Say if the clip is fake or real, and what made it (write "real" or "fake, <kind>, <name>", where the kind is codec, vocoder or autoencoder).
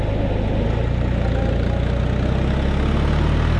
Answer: real